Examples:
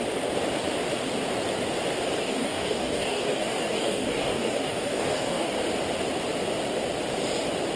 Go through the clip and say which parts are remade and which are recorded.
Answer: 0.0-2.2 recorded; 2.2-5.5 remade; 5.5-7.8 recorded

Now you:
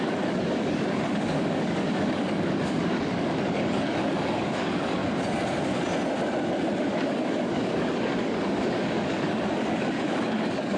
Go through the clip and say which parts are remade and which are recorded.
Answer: 0.0-5.0 remade; 5.0-6.8 recorded; 6.8-10.8 remade

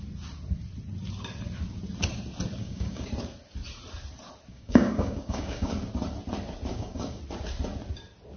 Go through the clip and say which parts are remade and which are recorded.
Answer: 0.0-2.6 recorded; 2.6-3.1 remade; 3.1-4.5 recorded; 4.5-5.7 remade; 5.7-6.7 recorded; 6.7-7.2 remade; 7.2-8.4 recorded

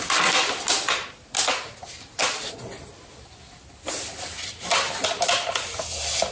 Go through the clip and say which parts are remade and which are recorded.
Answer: 0.0-6.3 recorded